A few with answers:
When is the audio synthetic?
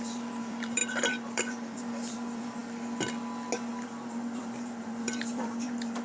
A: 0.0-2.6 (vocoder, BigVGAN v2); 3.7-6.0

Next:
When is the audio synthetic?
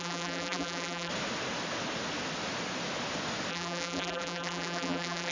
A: 0.0-1.1 (vocoder, BigVGAN v2); 3.5-5.3